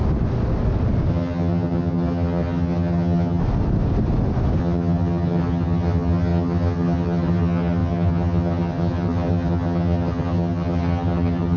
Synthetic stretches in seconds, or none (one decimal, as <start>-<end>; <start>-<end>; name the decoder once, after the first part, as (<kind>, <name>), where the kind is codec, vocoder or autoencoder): 1.1-3.4 (vocoder, HiFi-GAN); 4.6-11.6